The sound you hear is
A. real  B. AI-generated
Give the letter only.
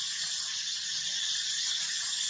A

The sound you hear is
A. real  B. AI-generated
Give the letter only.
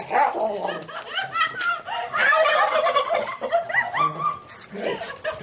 A